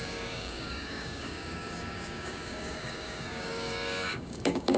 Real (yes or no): no